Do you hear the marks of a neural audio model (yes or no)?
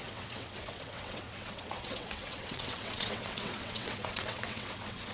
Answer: yes